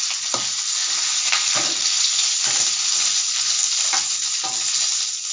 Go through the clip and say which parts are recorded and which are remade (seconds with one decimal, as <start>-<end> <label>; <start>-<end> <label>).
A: 0.0-5.3 recorded